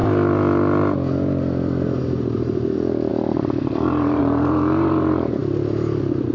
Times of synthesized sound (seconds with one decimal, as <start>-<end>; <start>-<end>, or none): 2.0-5.4